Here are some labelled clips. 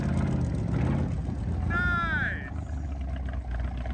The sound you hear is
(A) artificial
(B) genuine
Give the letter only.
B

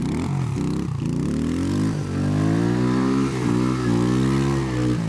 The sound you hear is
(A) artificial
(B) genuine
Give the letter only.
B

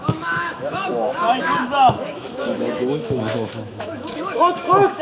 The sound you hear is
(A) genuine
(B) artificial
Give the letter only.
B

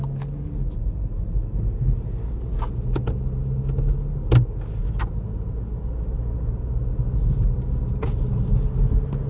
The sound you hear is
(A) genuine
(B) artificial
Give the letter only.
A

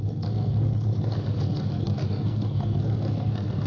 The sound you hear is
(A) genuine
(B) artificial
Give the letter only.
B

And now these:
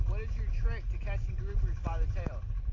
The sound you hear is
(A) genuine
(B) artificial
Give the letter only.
A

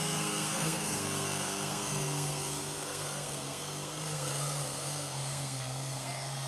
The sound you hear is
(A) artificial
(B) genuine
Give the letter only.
A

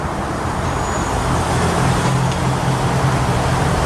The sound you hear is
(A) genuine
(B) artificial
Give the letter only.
A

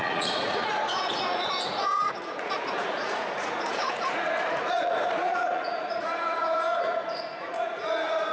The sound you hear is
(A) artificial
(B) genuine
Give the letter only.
A